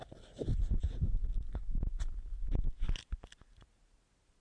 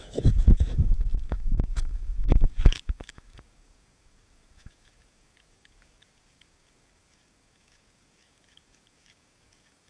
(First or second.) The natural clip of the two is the first